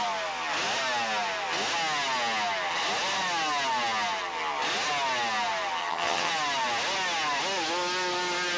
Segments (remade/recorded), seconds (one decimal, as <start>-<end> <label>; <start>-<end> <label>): 0.0-5.8 recorded; 5.8-6.3 remade; 6.3-8.6 recorded